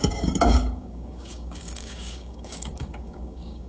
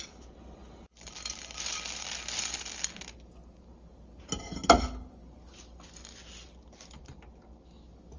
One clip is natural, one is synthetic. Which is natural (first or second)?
second